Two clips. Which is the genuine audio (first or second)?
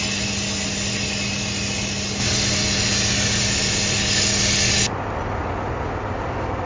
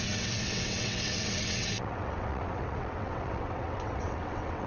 first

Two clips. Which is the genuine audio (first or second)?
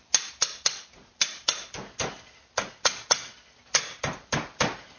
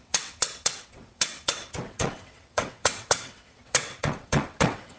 first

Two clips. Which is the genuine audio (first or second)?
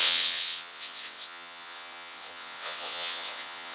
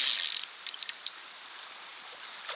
second